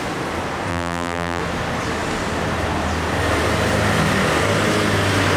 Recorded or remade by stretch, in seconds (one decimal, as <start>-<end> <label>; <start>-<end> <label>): 0.0-0.7 recorded; 0.7-1.4 remade; 1.4-5.4 recorded